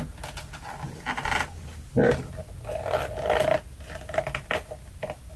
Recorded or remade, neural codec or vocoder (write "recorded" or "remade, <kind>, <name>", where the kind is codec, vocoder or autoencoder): recorded